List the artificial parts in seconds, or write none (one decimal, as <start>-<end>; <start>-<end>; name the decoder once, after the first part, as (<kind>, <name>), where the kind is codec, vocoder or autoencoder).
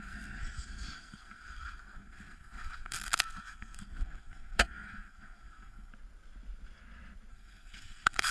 0.0-5.9 (codec, SNAC); 7.3-8.3